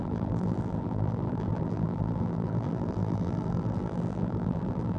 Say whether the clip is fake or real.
fake